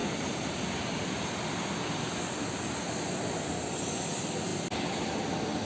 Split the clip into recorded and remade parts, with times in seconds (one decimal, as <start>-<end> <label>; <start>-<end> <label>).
0.0-5.7 recorded